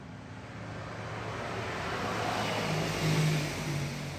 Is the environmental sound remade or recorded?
recorded